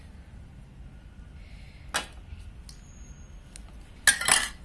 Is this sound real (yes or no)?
yes